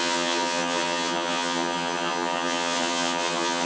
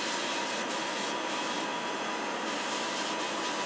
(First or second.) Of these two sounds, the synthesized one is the first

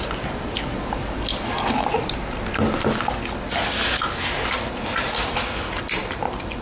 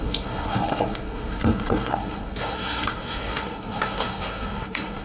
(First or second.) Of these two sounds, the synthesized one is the second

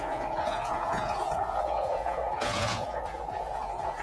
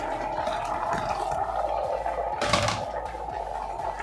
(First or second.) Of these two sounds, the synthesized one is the first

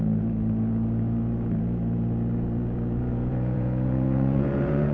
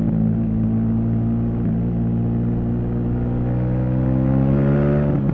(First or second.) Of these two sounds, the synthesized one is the first